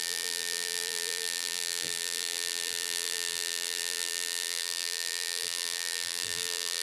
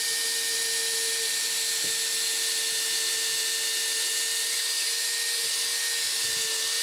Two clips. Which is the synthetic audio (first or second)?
first